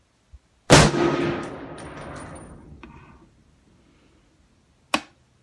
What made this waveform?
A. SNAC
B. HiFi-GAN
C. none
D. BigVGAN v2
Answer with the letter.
C